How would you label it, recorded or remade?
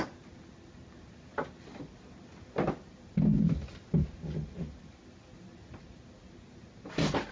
recorded